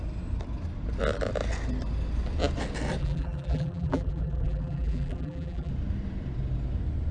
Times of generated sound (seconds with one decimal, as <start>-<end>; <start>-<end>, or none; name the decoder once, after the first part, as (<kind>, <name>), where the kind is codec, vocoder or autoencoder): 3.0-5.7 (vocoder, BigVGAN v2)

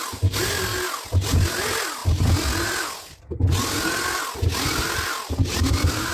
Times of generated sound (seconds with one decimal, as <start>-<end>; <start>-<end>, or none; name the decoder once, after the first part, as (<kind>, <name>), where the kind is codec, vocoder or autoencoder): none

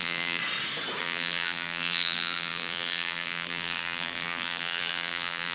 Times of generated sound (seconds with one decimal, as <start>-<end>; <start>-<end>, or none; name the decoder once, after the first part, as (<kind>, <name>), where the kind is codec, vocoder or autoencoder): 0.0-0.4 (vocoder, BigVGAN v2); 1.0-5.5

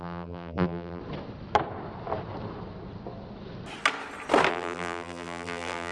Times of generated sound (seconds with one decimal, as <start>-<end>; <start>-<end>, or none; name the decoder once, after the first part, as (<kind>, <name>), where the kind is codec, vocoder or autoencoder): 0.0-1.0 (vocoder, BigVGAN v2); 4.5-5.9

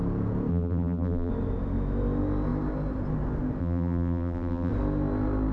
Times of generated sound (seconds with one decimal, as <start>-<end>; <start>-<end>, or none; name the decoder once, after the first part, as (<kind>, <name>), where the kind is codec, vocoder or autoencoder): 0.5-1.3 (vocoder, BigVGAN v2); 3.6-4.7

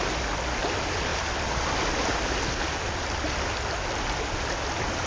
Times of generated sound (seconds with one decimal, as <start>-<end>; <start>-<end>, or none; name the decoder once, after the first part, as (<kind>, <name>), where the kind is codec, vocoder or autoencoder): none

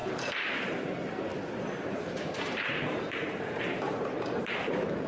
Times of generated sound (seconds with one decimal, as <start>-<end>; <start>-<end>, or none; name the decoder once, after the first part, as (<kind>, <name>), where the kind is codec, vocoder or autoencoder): 0.0-5.1 (vocoder, BigVGAN v2)

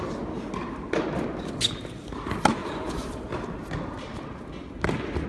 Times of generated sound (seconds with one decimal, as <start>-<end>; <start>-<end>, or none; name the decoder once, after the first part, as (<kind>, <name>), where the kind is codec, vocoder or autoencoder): 2.6-3.2 (vocoder, BigVGAN v2)